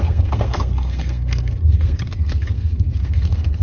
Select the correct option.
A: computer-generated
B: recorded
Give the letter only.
A